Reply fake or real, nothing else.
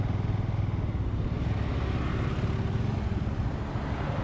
real